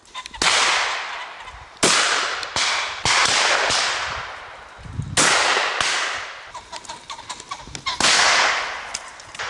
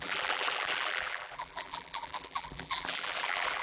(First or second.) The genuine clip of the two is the first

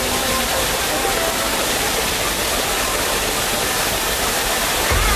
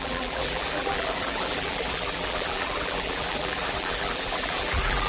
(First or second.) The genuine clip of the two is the first